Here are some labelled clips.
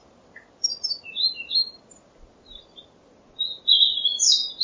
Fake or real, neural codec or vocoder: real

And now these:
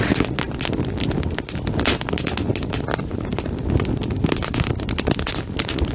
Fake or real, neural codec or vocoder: real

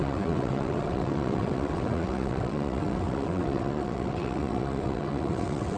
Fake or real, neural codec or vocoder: fake, vocoder, WaveNeXt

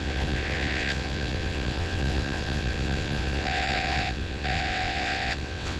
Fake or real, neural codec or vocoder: fake, vocoder, WaveNeXt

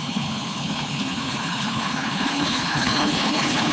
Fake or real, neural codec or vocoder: fake, codec, HILCodec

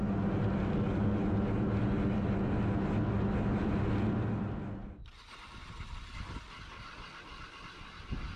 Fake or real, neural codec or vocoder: real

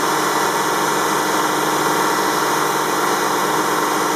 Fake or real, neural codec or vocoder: real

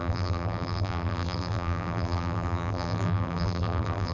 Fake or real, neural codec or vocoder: fake, vocoder, BigVGAN v2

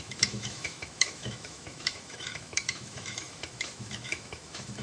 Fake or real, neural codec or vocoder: fake, autoencoder, DAC-VAE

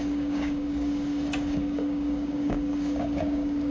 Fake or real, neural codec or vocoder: fake, codec, DAC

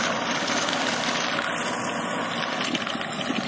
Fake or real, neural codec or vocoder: real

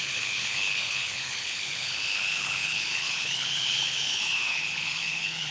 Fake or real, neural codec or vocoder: fake, codec, HILCodec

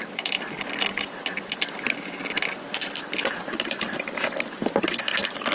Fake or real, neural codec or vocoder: real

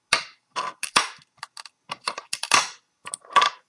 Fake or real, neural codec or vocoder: real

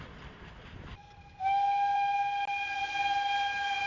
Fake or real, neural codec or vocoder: real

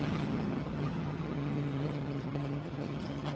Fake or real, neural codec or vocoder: fake, vocoder, HiFi-GAN